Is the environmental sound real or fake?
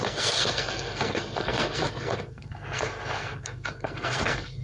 fake